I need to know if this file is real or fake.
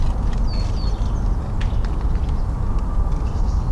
real